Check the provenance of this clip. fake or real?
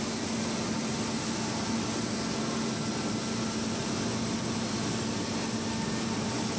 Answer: real